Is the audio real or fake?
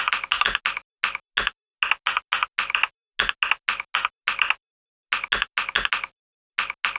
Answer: real